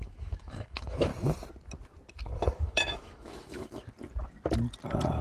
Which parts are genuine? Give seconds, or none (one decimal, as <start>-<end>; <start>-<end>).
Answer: 1.1-2.5; 3.8-5.2